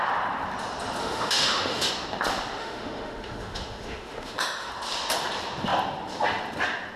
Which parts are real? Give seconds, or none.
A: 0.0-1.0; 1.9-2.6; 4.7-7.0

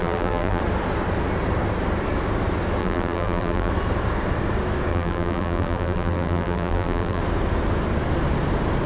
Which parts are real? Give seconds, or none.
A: 0.6-2.8; 3.7-4.9; 7.2-8.9